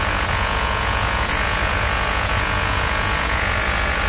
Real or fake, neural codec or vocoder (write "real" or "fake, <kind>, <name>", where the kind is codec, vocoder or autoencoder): fake, vocoder, Vocos